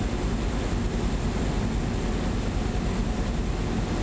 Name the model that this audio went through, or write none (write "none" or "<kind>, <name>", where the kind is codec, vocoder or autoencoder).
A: none